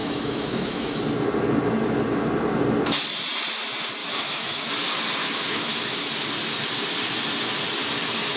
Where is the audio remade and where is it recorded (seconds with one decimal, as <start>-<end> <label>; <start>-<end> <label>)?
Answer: 0.0-1.0 remade; 1.0-4.0 recorded; 4.0-4.7 remade; 4.7-5.2 recorded; 5.2-6.1 remade; 6.1-8.4 recorded